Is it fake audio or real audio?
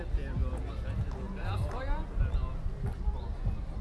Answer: real